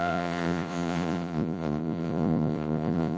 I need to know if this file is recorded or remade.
remade